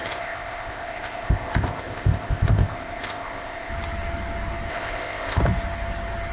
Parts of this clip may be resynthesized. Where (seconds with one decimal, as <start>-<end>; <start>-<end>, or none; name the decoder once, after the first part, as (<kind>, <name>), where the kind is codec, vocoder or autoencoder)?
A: 0.0-3.7 (codec, ZipCodec); 4.7-5.4